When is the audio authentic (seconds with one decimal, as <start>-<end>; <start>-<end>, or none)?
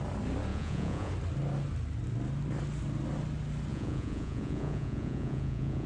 0.0-0.5; 1.1-3.7